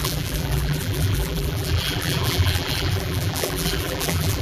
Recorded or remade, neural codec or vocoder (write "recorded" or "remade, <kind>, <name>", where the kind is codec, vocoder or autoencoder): remade, vocoder, BigVGAN v2